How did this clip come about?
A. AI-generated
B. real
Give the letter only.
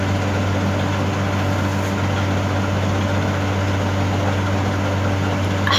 B